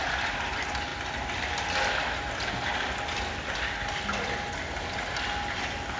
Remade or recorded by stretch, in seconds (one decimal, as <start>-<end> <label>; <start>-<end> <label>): 0.0-6.0 recorded